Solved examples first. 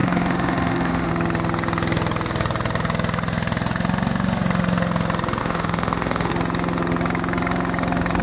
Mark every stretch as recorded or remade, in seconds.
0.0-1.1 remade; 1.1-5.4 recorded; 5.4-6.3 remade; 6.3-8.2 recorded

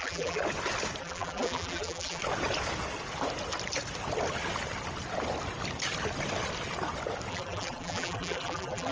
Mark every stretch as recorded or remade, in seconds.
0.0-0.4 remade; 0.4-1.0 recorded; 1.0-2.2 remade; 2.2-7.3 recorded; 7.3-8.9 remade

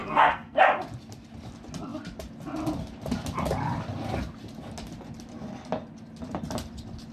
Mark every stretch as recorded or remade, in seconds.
0.0-0.6 remade; 0.6-7.1 recorded

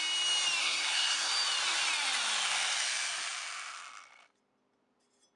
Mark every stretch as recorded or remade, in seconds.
0.0-0.6 recorded; 0.6-1.3 remade; 1.3-5.4 recorded

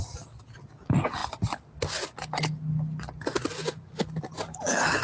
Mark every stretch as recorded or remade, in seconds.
0.0-5.0 recorded

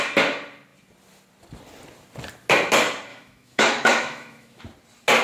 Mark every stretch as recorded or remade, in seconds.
0.0-3.1 recorded; 3.1-4.6 remade; 4.6-5.2 recorded

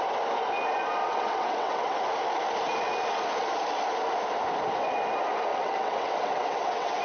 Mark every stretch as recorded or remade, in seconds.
0.0-1.0 recorded; 1.0-2.0 remade; 2.0-5.5 recorded; 5.5-7.0 remade

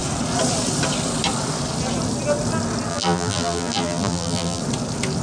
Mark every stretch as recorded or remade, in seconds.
0.0-2.9 recorded; 2.9-4.6 remade; 4.6-5.2 recorded